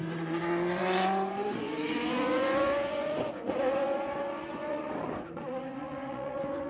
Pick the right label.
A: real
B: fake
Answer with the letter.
B